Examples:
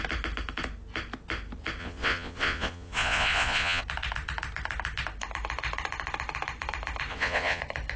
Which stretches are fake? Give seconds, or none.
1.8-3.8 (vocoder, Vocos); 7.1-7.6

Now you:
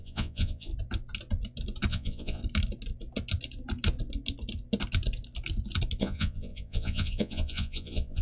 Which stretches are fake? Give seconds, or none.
0.0-0.7 (vocoder, Vocos); 1.9-2.4; 6.0-8.2

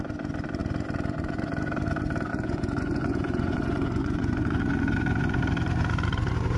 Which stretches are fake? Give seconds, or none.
2.3-4.6 (vocoder, Vocos)

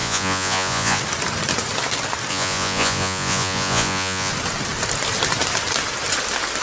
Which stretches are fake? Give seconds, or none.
0.0-1.0 (vocoder, Vocos); 2.3-4.3

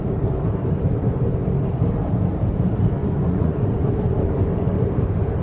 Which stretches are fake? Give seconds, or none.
3.0-3.9 (vocoder, Vocos)

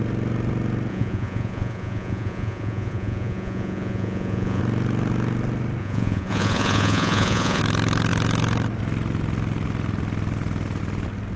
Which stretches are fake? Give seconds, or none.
0.9-4.6 (vocoder, Vocos); 5.8-7.6

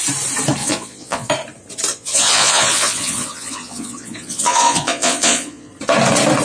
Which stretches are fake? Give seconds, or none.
0.6-1.3 (vocoder, Vocos); 1.9-5.7

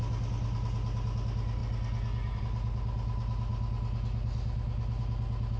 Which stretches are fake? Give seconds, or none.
none